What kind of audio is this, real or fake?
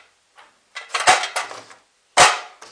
real